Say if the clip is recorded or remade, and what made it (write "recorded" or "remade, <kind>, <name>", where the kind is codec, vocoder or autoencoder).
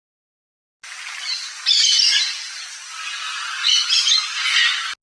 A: recorded